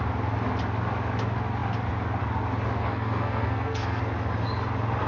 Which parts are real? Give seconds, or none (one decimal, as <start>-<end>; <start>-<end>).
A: 0.0-2.8; 4.0-5.1

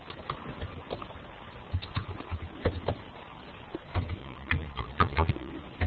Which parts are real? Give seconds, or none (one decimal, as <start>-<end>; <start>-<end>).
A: 0.0-4.2; 5.5-5.9

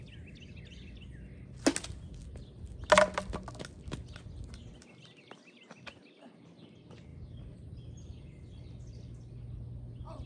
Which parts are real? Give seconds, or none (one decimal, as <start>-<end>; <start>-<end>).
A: 0.0-10.3

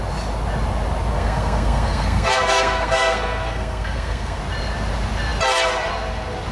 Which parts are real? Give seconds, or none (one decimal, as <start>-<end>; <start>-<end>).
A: 0.0-1.1; 4.4-6.5

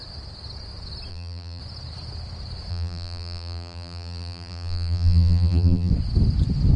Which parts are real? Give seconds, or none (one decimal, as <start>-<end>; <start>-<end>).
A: 0.0-1.1; 1.6-2.7; 5.9-6.8